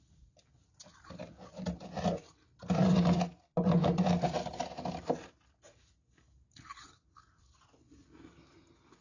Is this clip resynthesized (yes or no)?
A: no